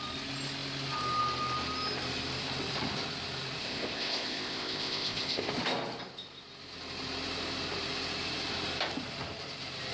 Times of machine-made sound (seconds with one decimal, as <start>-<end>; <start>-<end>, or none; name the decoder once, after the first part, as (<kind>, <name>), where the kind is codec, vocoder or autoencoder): 3.6-5.5 (codec, ZipCodec)